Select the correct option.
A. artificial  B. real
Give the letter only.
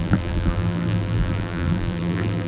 A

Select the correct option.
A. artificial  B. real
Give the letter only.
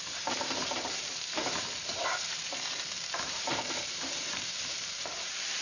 A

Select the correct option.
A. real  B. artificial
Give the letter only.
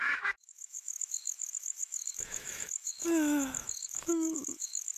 B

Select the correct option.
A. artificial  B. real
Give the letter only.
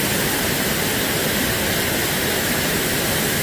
B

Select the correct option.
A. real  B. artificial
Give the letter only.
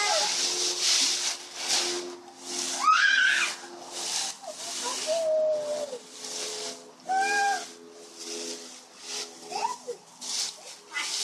A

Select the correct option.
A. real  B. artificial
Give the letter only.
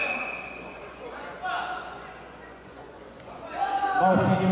B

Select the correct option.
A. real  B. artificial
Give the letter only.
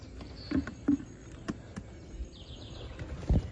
A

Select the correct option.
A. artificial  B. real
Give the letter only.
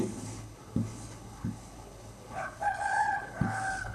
A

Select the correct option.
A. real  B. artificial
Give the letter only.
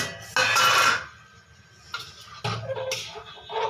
A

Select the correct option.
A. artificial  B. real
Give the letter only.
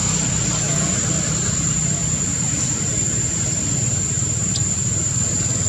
A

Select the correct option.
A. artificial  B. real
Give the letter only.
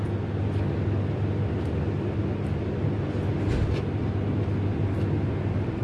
B